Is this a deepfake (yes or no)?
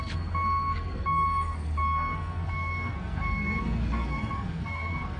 yes